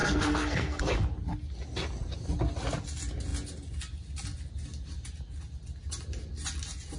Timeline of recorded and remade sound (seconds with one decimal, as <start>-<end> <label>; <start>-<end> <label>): 0.0-0.8 remade; 0.8-7.0 recorded

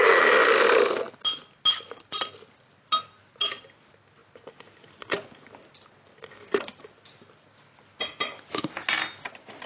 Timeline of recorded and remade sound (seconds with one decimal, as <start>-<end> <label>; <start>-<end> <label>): 0.0-9.7 recorded